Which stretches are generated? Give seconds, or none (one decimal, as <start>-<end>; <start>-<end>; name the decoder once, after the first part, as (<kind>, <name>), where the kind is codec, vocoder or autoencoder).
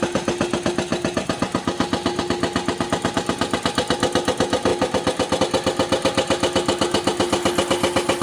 none